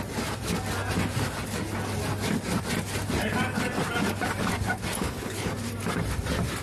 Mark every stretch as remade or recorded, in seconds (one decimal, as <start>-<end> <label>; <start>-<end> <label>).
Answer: 0.0-5.0 recorded; 5.0-5.5 remade; 5.5-6.6 recorded